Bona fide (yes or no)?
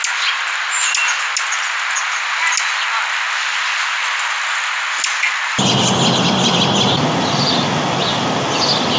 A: yes